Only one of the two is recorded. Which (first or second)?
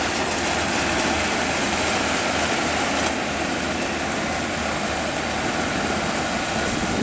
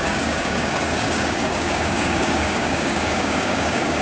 first